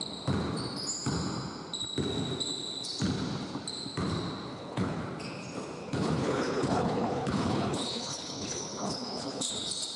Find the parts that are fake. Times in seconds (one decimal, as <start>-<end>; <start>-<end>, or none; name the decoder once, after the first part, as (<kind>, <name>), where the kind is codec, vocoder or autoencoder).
4.5-5.0 (codec, HILCodec); 5.8-9.5